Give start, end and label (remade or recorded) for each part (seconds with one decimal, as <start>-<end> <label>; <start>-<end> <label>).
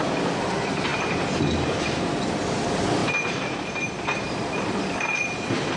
0.0-3.0 recorded; 3.0-4.8 remade; 4.8-5.8 recorded